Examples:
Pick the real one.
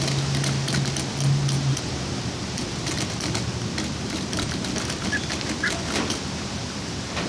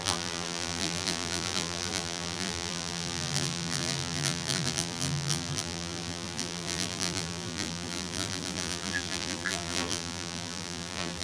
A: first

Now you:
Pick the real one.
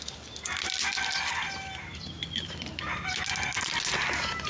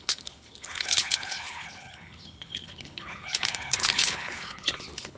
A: first